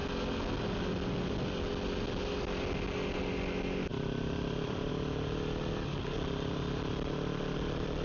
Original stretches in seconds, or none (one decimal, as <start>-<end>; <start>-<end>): 0.0-3.9; 4.9-8.0